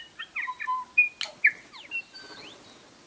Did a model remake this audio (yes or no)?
no